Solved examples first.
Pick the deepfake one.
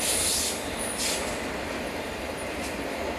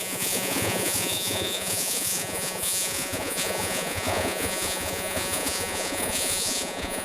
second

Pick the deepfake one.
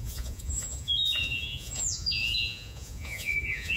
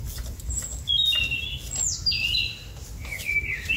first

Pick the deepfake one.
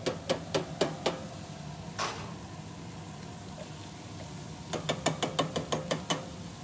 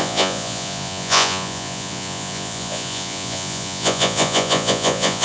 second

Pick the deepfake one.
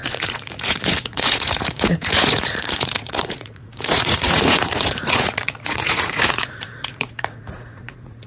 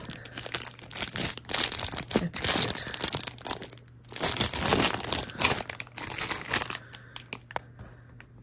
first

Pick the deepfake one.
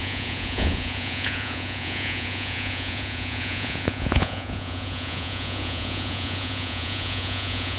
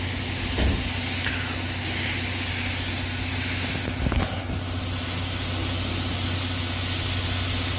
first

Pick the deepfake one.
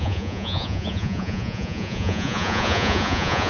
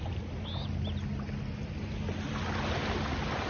first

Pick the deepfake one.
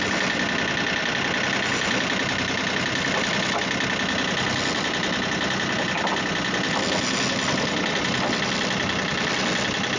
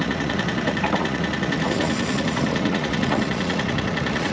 second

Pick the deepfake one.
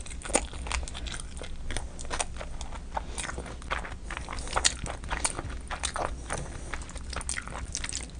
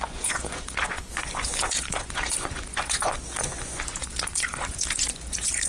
second